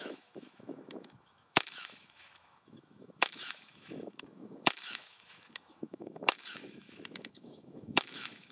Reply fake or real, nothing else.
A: fake